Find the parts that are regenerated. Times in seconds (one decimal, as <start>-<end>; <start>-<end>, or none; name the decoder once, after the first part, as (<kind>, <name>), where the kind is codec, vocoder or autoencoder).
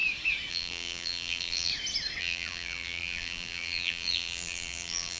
0.5-1.7 (vocoder, BigVGAN v2); 2.2-5.2